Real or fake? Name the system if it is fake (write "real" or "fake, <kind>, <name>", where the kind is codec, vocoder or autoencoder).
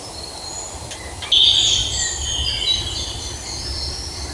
real